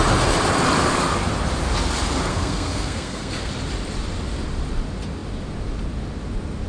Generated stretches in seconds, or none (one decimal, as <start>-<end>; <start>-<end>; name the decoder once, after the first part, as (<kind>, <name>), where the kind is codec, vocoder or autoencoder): 2.3-3.5 (codec, SNAC)

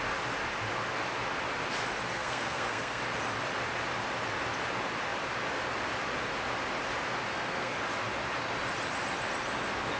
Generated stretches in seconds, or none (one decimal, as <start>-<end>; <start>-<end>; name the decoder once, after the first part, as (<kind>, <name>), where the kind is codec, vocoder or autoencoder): 2.1-3.0 (codec, SNAC); 7.3-7.8

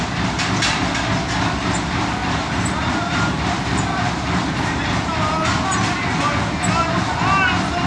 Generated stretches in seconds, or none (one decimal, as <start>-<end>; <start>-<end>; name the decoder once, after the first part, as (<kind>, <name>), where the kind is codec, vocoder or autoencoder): none

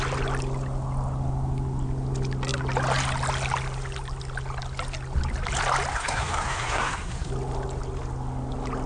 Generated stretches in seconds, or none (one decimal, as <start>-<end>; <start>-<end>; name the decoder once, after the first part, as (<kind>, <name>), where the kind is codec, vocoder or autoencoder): 5.9-7.3 (codec, SNAC)

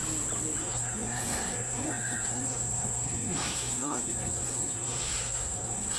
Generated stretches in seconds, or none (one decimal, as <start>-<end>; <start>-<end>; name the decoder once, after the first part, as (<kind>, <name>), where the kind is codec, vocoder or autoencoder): 0.6-6.0 (codec, SNAC)